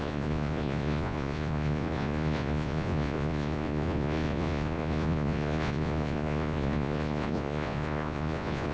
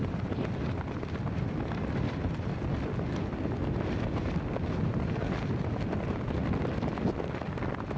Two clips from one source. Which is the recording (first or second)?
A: second